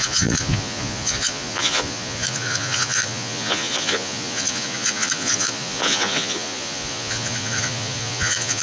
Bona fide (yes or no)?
no